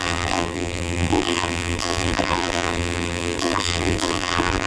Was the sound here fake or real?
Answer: fake